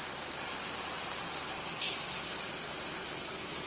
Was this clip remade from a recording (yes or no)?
no